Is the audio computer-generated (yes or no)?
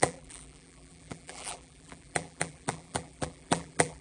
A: yes